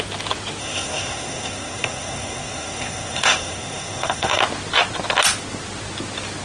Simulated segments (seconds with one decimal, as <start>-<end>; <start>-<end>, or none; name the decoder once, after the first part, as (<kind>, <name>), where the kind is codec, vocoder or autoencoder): 0.6-4.4 (codec, SNAC)